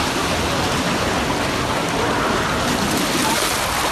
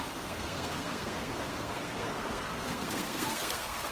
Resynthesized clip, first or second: second